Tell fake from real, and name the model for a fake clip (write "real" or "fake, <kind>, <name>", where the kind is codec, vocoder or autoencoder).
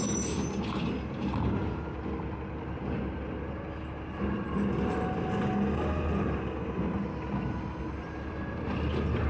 real